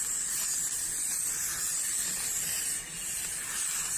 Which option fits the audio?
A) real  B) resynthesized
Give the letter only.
A